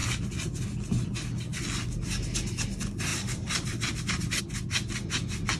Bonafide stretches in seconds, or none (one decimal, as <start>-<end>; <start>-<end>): 0.0-3.1; 4.4-5.6